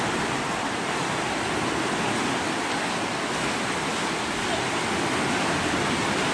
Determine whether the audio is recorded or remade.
recorded